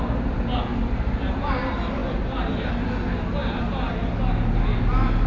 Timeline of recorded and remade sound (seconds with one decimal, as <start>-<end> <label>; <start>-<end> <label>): 0.0-0.7 recorded; 0.7-1.5 remade; 1.5-5.3 recorded